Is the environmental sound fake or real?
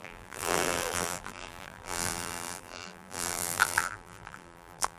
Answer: fake